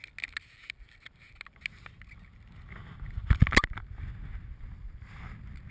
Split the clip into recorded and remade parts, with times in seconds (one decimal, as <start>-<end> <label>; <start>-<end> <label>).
0.0-5.7 recorded